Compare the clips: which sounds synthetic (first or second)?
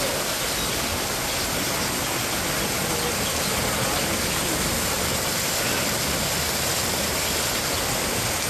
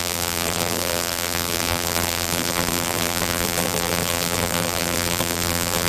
second